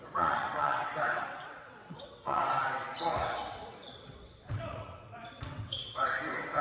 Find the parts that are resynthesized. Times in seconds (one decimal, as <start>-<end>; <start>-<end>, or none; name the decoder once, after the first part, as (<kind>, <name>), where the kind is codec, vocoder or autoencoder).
0.0-6.6 (vocoder, WaveNeXt)